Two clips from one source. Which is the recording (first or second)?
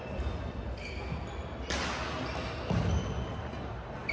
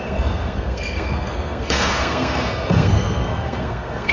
first